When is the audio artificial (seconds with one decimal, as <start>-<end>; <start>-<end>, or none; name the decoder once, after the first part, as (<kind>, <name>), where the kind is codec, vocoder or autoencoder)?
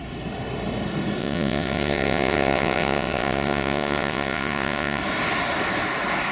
1.2-5.0 (vocoder, WaveNeXt)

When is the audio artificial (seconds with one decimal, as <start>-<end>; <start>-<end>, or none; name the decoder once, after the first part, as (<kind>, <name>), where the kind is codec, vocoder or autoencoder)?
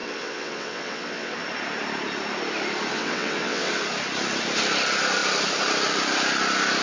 0.0-1.4 (vocoder, WaveNeXt); 2.9-3.7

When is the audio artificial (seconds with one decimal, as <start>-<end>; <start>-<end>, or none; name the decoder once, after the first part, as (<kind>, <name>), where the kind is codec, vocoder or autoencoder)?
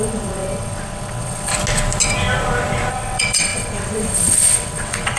0.0-1.5 (vocoder, WaveNeXt); 2.9-5.2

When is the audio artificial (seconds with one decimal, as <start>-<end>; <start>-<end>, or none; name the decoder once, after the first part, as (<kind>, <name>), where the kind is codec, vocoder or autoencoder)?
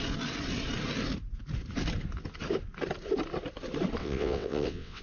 4.0-5.0 (vocoder, WaveNeXt)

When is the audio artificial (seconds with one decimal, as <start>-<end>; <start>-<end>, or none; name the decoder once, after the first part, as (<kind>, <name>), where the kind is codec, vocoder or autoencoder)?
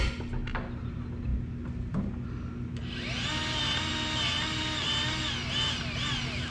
none